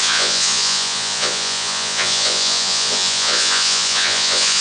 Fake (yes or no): yes